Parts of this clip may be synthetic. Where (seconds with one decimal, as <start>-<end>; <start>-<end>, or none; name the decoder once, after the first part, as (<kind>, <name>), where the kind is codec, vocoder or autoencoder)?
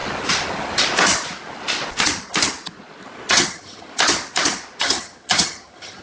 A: 3.3-3.9 (vocoder, HiFi-GAN); 4.8-6.0